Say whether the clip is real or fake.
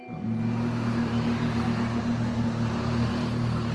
real